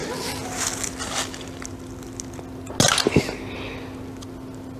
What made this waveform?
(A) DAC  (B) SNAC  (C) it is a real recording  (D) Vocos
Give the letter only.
C